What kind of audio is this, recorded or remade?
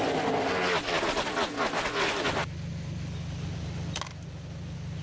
recorded